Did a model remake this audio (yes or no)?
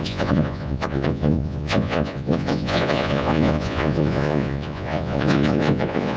yes